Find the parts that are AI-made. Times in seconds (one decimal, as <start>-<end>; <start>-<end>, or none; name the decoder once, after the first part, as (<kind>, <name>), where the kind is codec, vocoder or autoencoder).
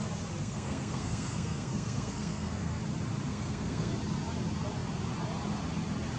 0.4-2.8 (codec, SNAC); 3.3-3.9